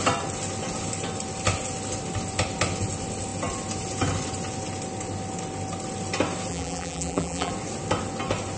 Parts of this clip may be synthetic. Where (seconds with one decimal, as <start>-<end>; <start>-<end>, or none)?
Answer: 6.5-7.5